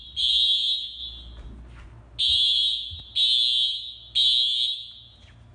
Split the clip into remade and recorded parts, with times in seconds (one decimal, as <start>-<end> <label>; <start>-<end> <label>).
0.0-5.5 recorded